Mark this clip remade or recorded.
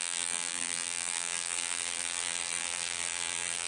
remade